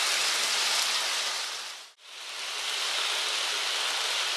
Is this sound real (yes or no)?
yes